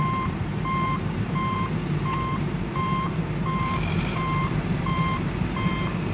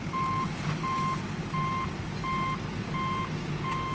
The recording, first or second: second